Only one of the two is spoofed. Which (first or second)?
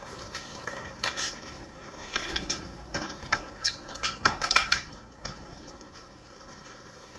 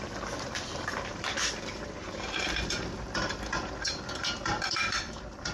first